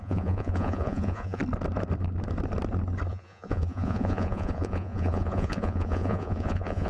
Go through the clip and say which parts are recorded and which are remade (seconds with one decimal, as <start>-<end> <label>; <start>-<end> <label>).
0.0-1.4 remade; 1.4-3.1 recorded; 3.1-6.9 remade